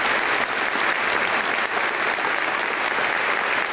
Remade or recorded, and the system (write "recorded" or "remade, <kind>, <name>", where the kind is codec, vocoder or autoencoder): recorded